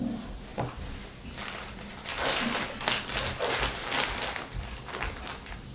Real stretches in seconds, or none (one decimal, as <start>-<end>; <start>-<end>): 0.0-5.7